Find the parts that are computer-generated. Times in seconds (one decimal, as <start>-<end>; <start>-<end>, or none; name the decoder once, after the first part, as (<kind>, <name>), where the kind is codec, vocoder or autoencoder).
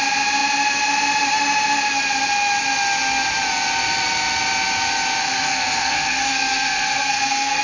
5.2-7.6 (codec, SNAC)